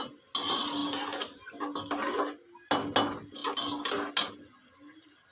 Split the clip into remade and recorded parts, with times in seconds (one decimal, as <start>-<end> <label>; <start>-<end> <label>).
0.0-5.3 recorded